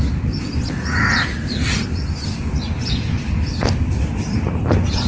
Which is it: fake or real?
real